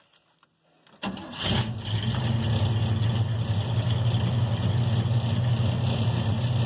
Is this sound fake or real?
real